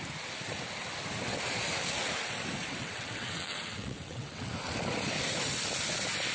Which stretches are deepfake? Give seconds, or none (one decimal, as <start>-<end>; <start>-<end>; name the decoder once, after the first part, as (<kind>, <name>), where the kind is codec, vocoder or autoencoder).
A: 2.7-4.5 (vocoder, WaveNeXt)